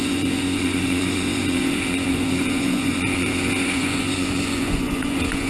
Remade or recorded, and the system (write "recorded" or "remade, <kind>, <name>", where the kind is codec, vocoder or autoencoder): remade, vocoder, Vocos